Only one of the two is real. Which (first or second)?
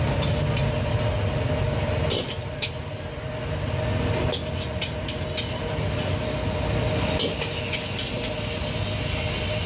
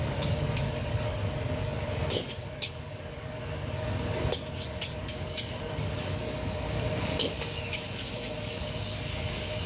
first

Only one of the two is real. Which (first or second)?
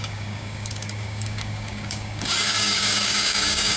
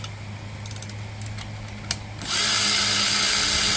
second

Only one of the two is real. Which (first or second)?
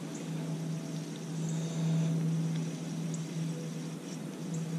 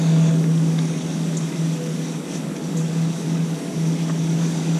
first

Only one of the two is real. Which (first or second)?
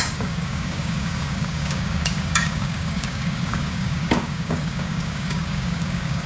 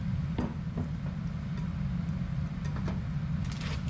second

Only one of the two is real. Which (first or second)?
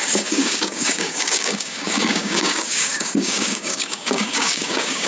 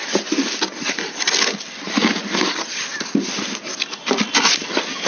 second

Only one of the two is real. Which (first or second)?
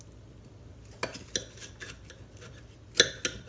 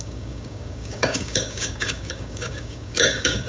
first